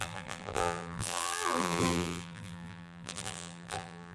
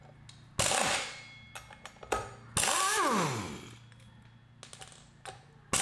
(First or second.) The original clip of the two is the second